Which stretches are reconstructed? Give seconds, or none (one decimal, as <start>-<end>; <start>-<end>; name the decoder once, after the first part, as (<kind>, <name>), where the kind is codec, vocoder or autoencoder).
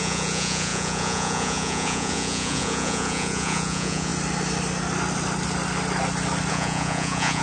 0.0-4.1 (vocoder, Vocos); 6.5-7.4